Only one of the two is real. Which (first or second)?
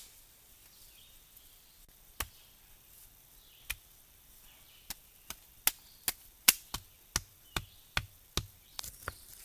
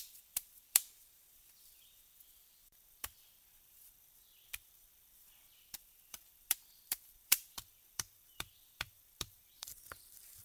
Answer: first